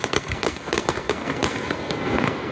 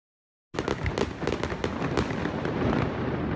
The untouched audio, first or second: second